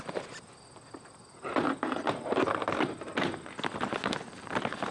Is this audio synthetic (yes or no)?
no